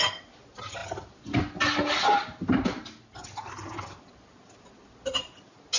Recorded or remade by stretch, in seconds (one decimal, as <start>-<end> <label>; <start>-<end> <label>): 0.0-5.8 recorded